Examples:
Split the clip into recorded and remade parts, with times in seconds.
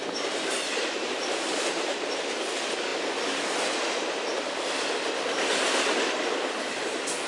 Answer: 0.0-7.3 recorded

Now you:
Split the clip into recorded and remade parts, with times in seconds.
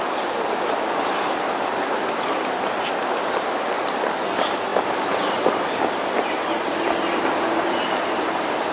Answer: 0.0-8.7 recorded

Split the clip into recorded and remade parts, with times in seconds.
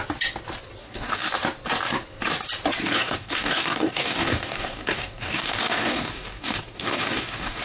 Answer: 0.0-0.8 recorded; 0.8-1.3 remade; 1.3-2.8 recorded; 2.8-7.6 remade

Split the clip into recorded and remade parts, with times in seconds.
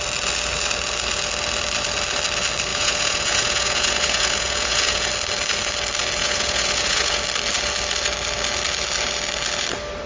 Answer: 0.0-2.7 recorded; 2.7-5.1 remade; 5.1-6.2 recorded; 6.2-7.2 remade; 7.2-10.1 recorded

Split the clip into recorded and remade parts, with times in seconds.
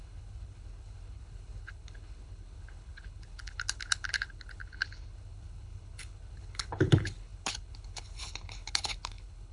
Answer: 0.0-9.5 remade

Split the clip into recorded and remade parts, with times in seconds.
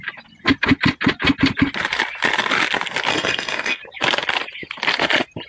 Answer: 0.0-3.1 recorded; 3.1-3.8 remade; 3.8-5.5 recorded